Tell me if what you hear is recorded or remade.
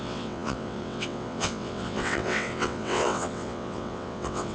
remade